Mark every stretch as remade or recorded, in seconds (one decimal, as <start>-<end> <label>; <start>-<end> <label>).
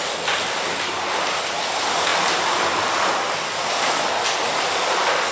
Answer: 0.0-2.1 recorded; 2.1-4.1 remade; 4.1-5.3 recorded